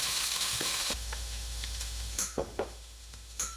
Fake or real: fake